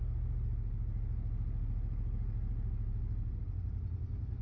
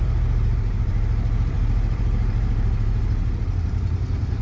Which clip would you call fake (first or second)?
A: second